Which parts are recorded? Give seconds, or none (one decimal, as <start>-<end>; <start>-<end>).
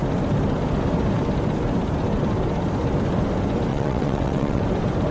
0.0-3.7; 4.6-5.1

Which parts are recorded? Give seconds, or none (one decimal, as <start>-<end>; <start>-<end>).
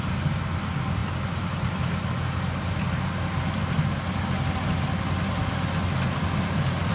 0.0-6.9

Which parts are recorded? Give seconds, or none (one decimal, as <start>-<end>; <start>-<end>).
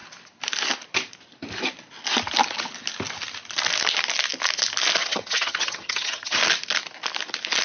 0.0-5.0; 6.4-7.6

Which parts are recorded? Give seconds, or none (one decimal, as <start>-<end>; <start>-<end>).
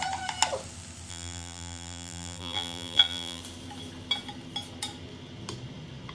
0.0-1.1; 3.4-6.1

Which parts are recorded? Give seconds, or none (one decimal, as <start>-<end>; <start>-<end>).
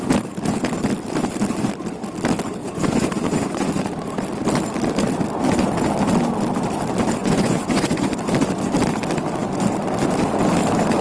0.0-2.6; 3.7-7.2; 8.1-11.0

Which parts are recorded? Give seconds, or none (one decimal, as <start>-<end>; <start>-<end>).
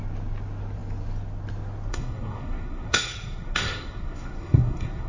0.0-1.9